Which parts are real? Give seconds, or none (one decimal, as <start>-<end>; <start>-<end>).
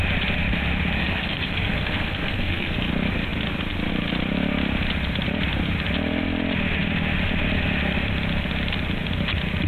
0.0-1.0; 2.9-9.7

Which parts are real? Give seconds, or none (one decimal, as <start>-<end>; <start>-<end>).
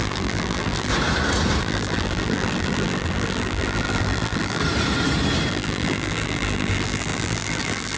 0.9-1.6; 4.6-5.5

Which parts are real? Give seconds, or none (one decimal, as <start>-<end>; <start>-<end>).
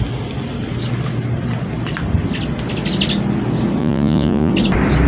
0.0-3.8; 4.5-5.1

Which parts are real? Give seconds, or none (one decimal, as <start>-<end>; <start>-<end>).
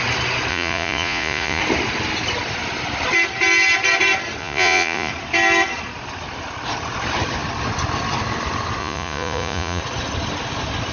0.0-0.5; 1.6-4.4; 5.1-8.8; 9.8-10.9